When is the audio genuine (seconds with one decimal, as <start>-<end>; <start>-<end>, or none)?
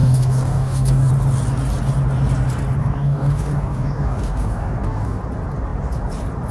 1.1-2.8; 5.2-6.5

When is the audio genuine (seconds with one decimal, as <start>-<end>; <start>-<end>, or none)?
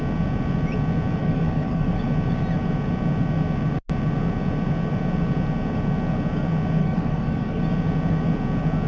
0.0-1.2; 2.0-6.8; 7.6-8.9